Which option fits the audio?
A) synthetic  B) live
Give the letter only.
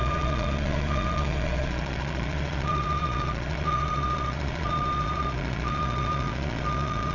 A